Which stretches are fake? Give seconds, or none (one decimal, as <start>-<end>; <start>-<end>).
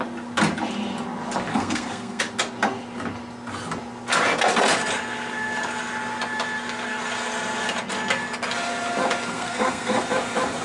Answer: 1.5-2.2; 9.3-10.0